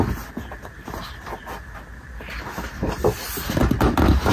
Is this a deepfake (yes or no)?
no